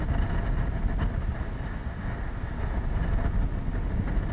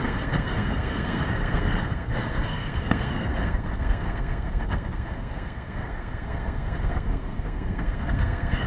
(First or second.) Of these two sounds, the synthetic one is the second